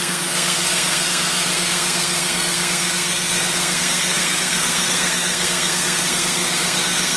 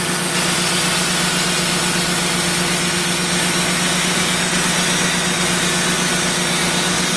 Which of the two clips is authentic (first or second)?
second